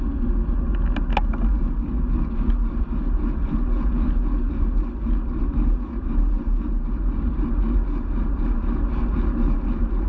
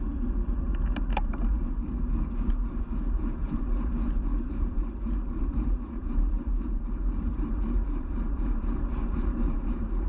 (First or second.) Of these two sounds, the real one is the first